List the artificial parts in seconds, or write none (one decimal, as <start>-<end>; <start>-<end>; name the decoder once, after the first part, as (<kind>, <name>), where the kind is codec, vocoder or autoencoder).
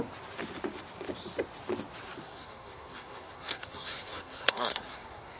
2.2-5.4 (codec, SNAC)